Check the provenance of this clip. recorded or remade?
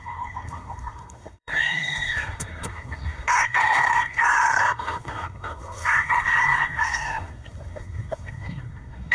remade